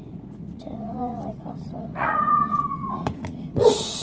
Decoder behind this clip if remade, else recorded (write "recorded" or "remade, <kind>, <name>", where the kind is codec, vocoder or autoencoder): remade, vocoder, Vocos